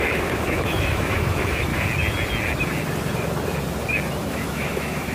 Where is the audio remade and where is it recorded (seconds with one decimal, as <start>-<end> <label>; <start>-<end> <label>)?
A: 0.0-1.7 remade; 1.7-4.2 recorded; 4.2-5.1 remade